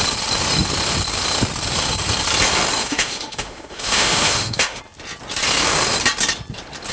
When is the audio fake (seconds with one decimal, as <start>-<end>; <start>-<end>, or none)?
2.8-4.8